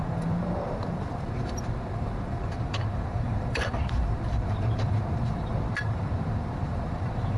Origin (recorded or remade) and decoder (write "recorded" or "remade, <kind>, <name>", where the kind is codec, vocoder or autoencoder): remade, vocoder, BigVGAN v2